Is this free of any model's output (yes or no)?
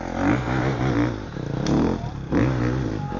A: yes